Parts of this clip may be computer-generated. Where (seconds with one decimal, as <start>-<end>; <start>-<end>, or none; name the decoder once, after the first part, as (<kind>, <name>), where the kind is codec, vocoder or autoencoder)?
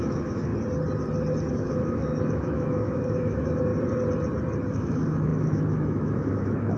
0.0-0.5 (autoencoder, DAC-VAE); 1.5-3.7; 4.7-6.8